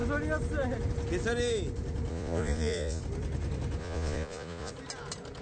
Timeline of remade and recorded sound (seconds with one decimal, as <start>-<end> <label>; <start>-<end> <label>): 0.0-2.1 recorded; 2.1-3.0 remade; 3.0-3.8 recorded; 3.8-4.7 remade; 4.7-5.4 recorded